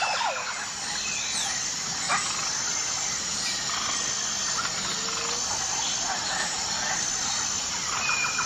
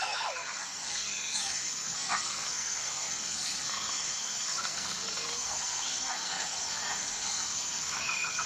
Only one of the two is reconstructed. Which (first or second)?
second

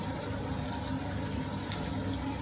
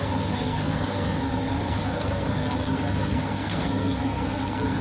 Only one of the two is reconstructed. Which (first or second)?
second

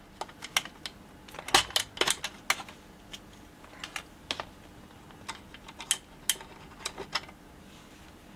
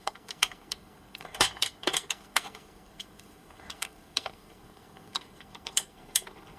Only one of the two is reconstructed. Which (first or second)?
second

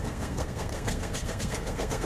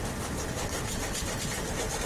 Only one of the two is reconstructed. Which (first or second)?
first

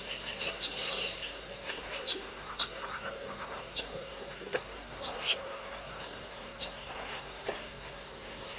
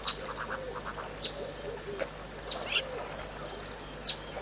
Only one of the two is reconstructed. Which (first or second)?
first